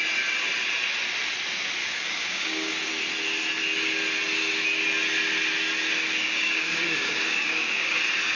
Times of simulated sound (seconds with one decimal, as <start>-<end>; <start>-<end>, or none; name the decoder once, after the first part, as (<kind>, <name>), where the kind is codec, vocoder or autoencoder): 1.8-2.9 (codec, DAC); 6.2-7.9